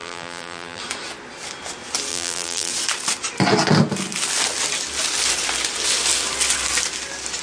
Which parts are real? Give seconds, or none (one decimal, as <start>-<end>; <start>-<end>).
0.8-2.1; 2.7-7.4